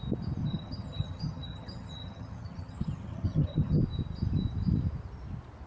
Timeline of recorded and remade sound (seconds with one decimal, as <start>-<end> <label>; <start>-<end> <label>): 0.0-0.4 recorded; 0.4-3.8 remade; 3.8-5.7 recorded